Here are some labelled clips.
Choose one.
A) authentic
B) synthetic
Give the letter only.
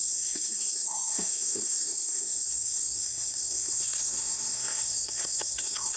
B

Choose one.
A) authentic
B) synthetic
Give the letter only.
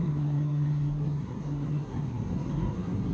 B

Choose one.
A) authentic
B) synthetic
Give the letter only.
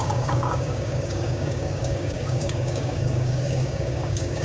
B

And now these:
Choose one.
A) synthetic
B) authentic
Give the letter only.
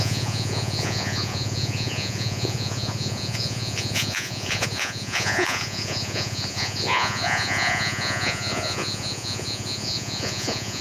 A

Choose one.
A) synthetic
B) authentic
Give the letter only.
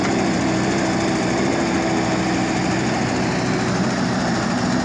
B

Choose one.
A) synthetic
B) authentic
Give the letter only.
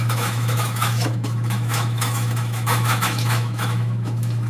A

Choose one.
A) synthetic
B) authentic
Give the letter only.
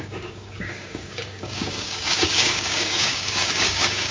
A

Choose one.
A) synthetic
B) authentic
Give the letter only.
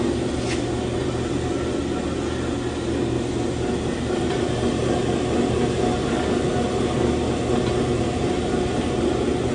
B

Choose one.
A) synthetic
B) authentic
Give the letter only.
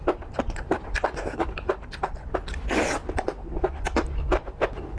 B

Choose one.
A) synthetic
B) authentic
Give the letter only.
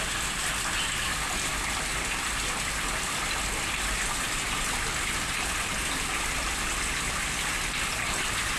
B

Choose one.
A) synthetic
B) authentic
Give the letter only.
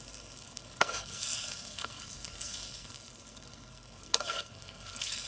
A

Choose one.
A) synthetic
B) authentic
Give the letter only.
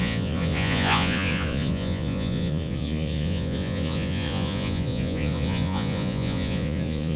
A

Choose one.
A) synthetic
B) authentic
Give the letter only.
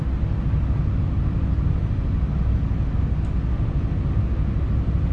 B